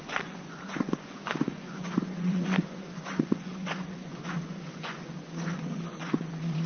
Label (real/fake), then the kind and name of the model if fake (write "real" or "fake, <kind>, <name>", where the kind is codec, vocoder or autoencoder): fake, vocoder, Vocos